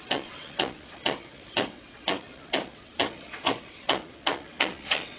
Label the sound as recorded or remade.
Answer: remade